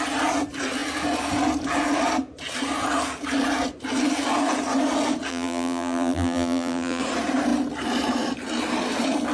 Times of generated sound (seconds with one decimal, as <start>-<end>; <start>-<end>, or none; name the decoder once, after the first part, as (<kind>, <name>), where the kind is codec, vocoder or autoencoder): 5.3-7.0 (vocoder, BigVGAN v2)